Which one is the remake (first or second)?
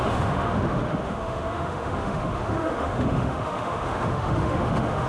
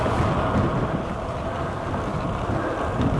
first